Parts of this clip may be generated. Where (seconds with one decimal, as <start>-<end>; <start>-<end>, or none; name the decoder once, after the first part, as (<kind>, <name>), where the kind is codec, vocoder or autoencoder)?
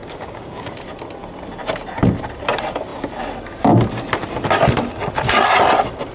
0.0-0.7 (codec, DAC)